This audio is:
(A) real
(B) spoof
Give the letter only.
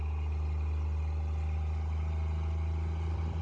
B